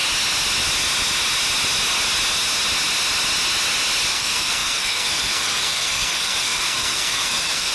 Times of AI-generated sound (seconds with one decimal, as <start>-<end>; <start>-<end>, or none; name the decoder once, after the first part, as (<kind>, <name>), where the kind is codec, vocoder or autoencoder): 4.1-7.7 (codec, SNAC)